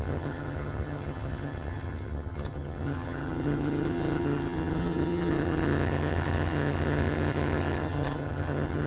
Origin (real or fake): fake